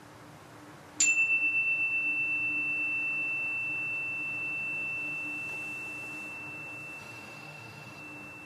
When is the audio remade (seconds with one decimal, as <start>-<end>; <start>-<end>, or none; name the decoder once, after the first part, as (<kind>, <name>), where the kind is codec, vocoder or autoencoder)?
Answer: 7.0-8.0 (autoencoder, DAC-VAE)